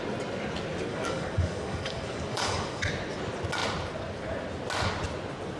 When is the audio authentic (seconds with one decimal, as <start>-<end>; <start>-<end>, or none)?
0.0-0.9; 2.9-5.6